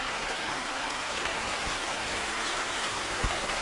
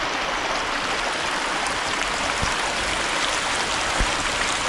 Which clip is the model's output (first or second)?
first